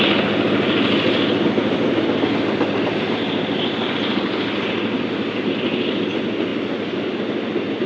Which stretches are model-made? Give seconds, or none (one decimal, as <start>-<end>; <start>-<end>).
none